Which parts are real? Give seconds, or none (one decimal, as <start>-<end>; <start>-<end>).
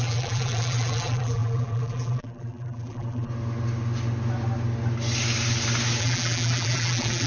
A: 3.3-6.0